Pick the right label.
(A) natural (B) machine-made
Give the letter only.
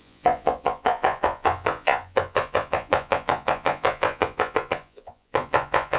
B